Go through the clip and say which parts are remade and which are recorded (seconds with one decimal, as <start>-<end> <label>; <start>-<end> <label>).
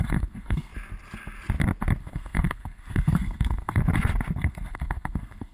0.0-0.7 remade; 0.7-2.0 recorded; 2.0-3.8 remade; 3.8-4.4 recorded; 4.4-5.5 remade